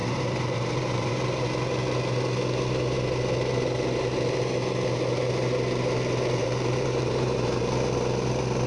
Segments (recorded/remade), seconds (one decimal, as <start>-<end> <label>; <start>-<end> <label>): 0.0-1.1 remade; 1.1-6.4 recorded; 6.4-7.6 remade; 7.6-8.7 recorded